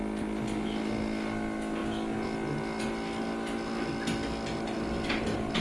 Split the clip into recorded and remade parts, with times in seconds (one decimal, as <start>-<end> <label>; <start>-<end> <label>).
0.0-5.6 recorded